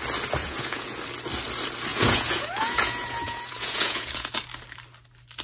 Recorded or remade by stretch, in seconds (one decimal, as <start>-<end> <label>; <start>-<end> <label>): 0.0-0.4 recorded; 0.4-1.0 remade; 1.0-1.9 recorded; 1.9-4.3 remade; 4.3-5.4 recorded